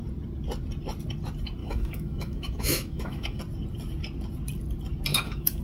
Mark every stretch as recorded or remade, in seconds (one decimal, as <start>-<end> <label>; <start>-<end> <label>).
0.0-1.6 recorded; 1.6-3.4 remade; 3.4-5.1 recorded; 5.1-5.6 remade